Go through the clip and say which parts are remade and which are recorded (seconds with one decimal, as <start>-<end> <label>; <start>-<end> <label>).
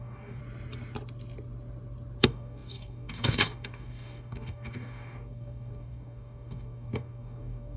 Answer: 0.0-0.4 remade; 0.4-2.2 recorded; 2.2-7.8 remade